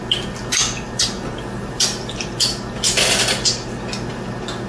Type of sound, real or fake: real